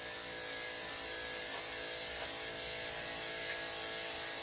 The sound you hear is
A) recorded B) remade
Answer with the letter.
A